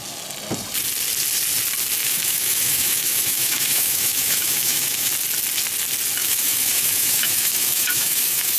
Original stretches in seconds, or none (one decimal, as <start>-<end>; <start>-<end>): 0.0-2.0; 5.1-6.2